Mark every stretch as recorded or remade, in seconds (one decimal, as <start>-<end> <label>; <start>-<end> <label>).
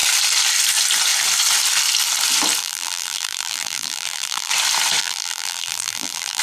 0.0-2.6 recorded; 2.6-4.5 remade; 4.5-5.0 recorded; 5.0-6.4 remade